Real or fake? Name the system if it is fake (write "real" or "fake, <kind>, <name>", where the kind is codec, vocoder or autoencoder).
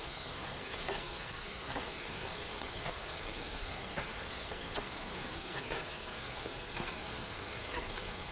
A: fake, codec, SNAC